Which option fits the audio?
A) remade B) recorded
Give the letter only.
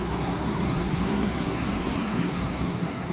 A